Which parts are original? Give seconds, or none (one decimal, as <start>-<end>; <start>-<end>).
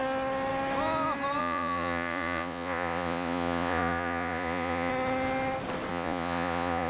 0.0-1.4; 4.9-5.9